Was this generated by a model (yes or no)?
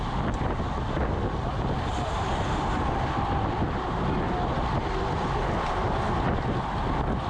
no